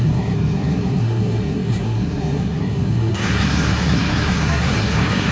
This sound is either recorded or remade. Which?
remade